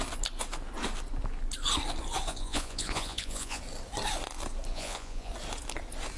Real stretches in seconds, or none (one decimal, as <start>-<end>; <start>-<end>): 0.0-2.3; 3.6-4.7; 5.3-6.2

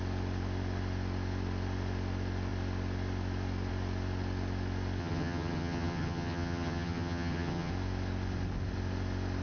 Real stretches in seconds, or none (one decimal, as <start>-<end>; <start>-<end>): 0.0-5.0; 7.7-9.4

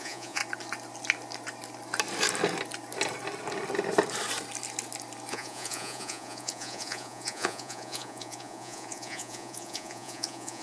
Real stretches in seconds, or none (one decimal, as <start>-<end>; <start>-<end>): 0.4-5.3

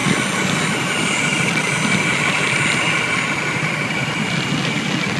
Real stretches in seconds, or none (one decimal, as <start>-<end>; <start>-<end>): 0.0-5.2

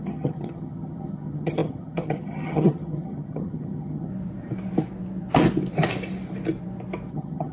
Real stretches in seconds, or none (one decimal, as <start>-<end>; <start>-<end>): 4.1-7.1

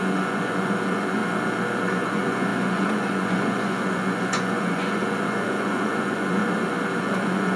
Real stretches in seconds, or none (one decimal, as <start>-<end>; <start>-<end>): 1.2-1.8; 6.4-7.0

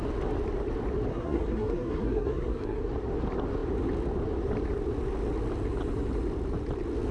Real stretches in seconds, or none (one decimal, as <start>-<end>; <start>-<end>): 0.0-1.1; 2.8-7.1

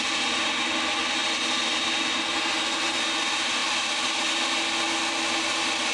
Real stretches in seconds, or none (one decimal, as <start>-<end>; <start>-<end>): 0.0-5.9